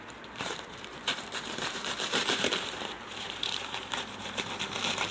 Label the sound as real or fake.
fake